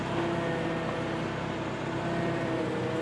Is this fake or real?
real